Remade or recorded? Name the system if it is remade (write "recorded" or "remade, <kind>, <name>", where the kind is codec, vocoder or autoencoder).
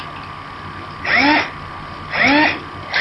recorded